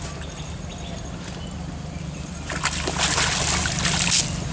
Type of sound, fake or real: real